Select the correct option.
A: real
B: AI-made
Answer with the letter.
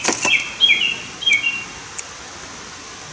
A